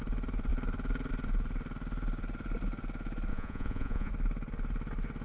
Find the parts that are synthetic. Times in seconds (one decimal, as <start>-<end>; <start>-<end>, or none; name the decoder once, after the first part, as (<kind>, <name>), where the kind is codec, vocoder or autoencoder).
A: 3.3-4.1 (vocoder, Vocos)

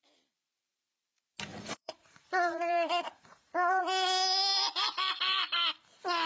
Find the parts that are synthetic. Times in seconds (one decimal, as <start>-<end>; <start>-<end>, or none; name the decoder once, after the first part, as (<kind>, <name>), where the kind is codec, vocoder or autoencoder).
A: 1.5-3.8 (vocoder, Vocos)

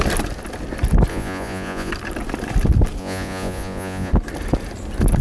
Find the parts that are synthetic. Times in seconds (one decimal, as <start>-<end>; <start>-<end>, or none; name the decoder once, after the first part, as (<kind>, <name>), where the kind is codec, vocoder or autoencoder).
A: 1.1-1.9 (vocoder, Vocos); 3.0-4.1

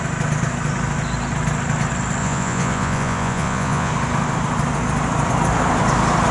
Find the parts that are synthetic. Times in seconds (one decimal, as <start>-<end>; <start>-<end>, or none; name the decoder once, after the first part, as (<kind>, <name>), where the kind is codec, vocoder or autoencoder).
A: 2.2-3.9 (vocoder, Vocos)